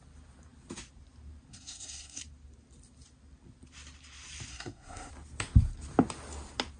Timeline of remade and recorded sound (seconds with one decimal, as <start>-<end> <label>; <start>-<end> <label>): 0.0-1.5 recorded; 1.5-2.2 remade; 2.2-4.5 recorded; 4.5-5.1 remade; 5.1-6.8 recorded